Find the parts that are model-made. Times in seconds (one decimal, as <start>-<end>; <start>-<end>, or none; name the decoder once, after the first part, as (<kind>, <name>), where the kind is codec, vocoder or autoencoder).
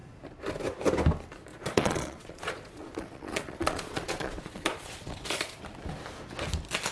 1.5-5.6 (vocoder, Vocos)